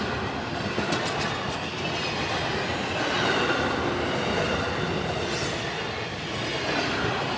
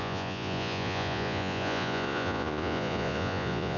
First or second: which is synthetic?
second